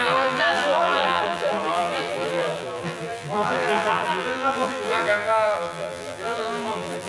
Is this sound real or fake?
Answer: fake